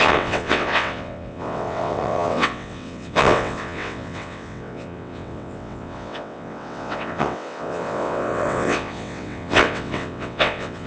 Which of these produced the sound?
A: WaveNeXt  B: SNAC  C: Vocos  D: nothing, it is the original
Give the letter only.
A